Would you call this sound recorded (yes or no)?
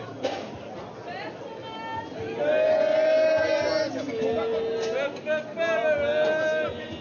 yes